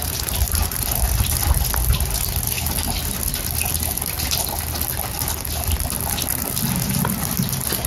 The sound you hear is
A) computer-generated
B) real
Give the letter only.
B